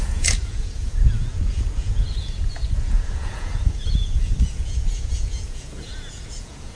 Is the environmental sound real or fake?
fake